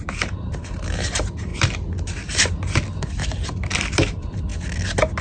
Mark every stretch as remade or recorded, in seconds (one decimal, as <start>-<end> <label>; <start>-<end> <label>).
0.0-1.5 remade; 1.5-2.9 recorded; 2.9-4.5 remade; 4.5-5.2 recorded